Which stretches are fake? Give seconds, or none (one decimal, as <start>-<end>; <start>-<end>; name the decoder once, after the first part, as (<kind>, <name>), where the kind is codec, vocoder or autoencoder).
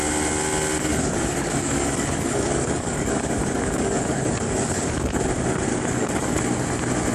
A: 0.9-5.2 (codec, DAC); 5.7-6.4